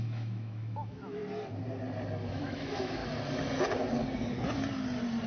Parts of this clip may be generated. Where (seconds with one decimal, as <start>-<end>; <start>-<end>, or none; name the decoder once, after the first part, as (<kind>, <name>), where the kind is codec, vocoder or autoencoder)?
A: 0.0-1.2 (autoencoder, DAC-VAE); 2.3-3.0